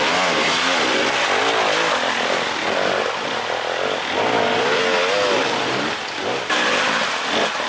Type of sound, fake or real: real